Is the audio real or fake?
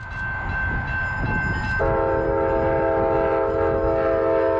real